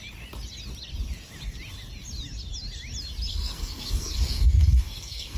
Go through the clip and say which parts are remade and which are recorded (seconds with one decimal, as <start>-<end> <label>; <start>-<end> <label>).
0.0-3.3 recorded; 3.3-5.4 remade